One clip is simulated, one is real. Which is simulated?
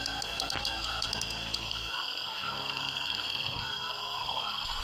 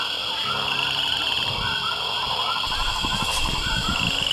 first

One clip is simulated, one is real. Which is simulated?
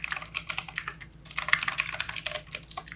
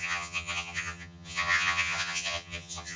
second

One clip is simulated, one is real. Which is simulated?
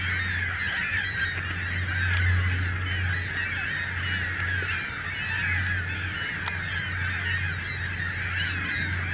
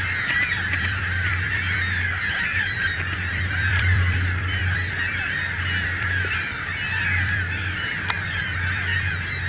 second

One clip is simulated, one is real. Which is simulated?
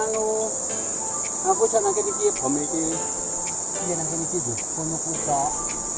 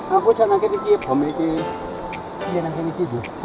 second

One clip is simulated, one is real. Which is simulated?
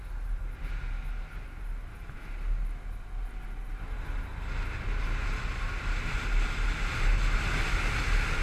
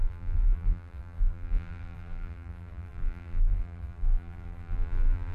second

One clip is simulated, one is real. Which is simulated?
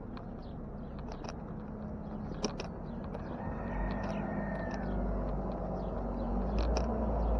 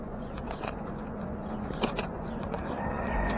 second